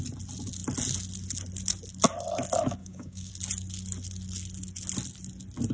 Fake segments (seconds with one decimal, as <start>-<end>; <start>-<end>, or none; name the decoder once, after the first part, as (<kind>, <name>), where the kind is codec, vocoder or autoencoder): 2.8-3.3 (codec, DAC)